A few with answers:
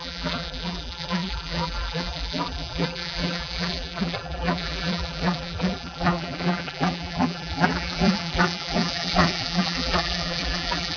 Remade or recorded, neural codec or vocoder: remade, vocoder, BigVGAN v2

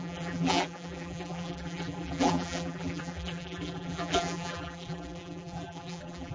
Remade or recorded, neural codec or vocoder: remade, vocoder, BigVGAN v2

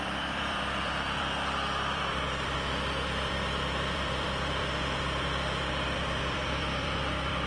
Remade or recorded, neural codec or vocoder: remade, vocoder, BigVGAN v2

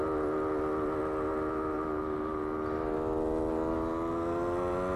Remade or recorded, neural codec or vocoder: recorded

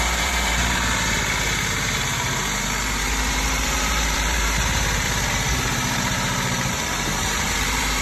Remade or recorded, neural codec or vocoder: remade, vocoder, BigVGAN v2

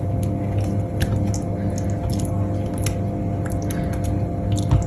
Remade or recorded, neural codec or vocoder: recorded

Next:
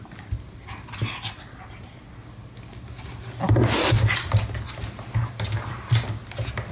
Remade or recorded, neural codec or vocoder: recorded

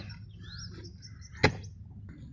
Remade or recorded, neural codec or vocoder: recorded